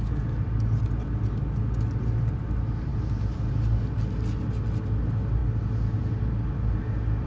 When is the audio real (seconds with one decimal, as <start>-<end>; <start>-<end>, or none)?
0.0-2.9; 3.5-5.4; 5.9-7.3